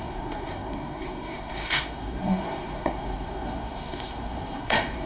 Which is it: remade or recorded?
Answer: remade